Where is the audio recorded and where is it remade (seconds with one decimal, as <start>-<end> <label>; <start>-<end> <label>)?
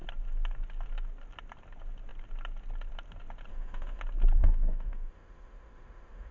0.0-3.5 recorded; 3.5-4.0 remade; 4.0-4.4 recorded; 4.4-6.3 remade